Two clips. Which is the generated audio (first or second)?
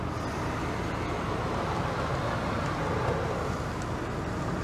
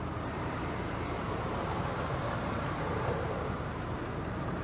second